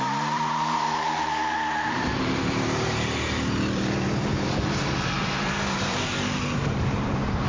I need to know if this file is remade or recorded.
remade